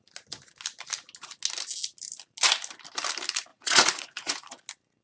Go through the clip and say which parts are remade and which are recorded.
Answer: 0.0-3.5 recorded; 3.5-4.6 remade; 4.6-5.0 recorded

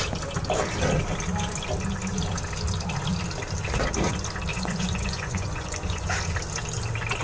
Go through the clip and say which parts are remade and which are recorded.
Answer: 0.0-4.5 recorded; 4.5-6.2 remade; 6.2-7.2 recorded

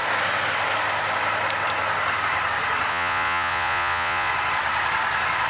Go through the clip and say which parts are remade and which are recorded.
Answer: 0.0-2.9 recorded; 2.9-4.3 remade; 4.3-5.5 recorded

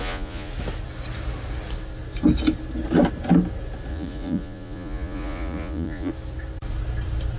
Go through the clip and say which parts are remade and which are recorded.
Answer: 0.0-0.5 remade; 0.5-3.9 recorded; 3.9-6.1 remade; 6.1-7.4 recorded

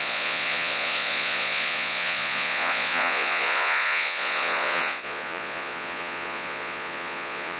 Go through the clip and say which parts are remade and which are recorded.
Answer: 0.0-7.6 remade

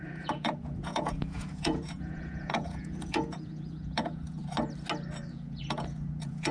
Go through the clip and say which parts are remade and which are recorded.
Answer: 0.0-4.4 remade; 4.4-5.3 recorded; 5.3-6.5 remade

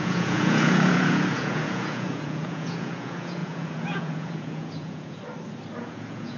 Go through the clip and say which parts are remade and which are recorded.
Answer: 0.0-5.2 remade; 5.2-5.8 recorded; 5.8-6.4 remade

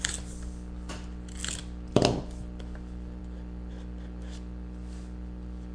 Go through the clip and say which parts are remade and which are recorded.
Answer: 0.0-5.7 recorded